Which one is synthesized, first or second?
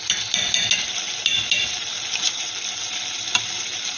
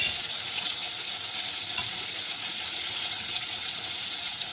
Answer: second